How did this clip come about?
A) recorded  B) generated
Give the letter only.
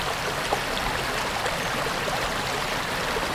A